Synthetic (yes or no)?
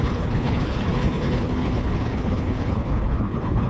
yes